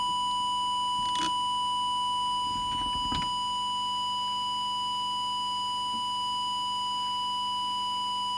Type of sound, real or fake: real